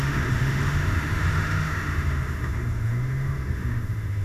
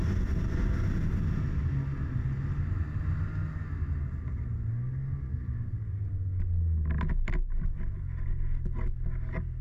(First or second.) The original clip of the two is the second